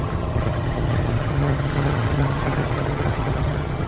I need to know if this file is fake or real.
fake